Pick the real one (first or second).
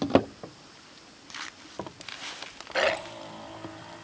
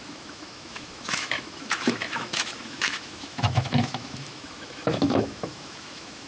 first